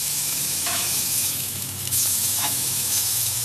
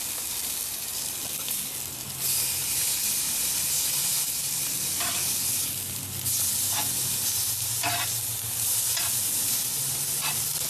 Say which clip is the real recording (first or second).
second